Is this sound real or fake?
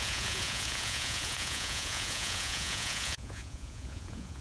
fake